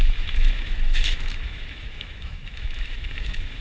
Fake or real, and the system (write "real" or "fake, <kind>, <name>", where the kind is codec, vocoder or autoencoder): fake, autoencoder, DAC-VAE